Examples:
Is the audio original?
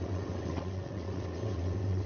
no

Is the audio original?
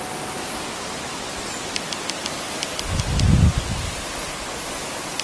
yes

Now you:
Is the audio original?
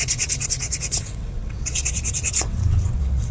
no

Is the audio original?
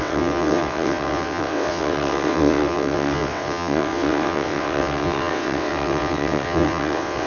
no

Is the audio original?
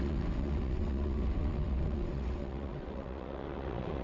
no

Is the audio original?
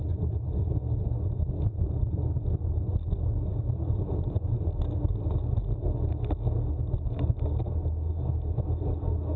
yes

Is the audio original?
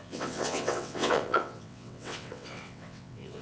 no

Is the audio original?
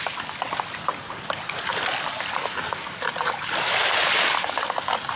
yes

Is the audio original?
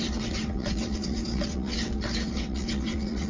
no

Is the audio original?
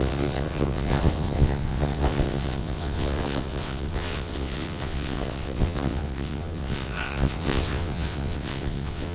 no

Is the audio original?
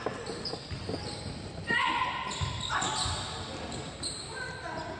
yes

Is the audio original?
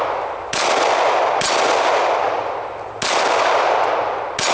yes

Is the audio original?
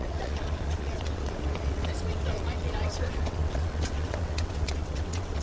no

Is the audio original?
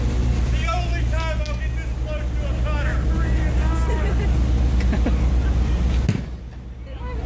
yes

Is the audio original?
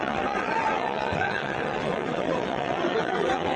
no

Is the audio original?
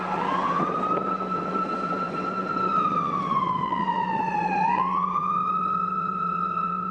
no